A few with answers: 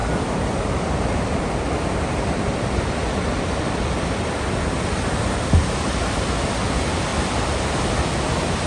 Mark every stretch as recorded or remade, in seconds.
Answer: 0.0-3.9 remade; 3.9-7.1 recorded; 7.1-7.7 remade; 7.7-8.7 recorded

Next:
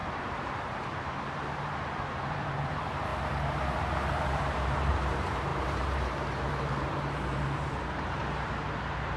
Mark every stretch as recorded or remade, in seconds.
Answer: 0.0-8.2 remade; 8.2-9.2 recorded

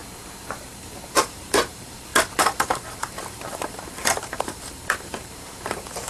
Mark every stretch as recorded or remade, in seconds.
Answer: 0.0-1.1 recorded; 1.1-6.1 remade

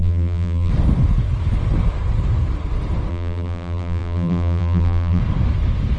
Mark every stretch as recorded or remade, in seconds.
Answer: 0.0-0.7 remade; 0.7-3.1 recorded; 3.1-5.2 remade; 5.2-6.0 recorded

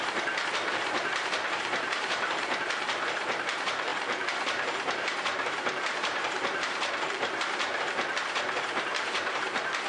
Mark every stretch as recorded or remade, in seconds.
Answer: 0.0-9.9 remade

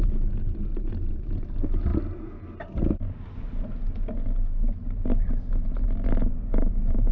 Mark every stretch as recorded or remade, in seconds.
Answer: 0.0-1.9 remade; 1.9-6.2 recorded; 6.2-7.1 remade

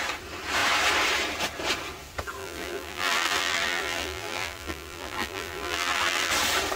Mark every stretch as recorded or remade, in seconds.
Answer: 0.0-2.4 recorded; 2.4-6.3 remade; 6.3-6.8 recorded

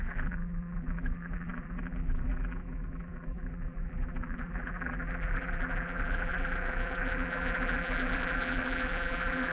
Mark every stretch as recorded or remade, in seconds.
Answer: 0.0-9.5 remade